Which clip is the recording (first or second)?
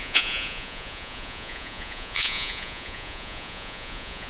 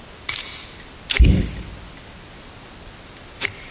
second